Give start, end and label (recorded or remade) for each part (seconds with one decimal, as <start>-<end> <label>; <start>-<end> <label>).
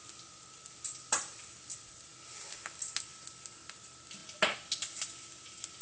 0.0-5.8 recorded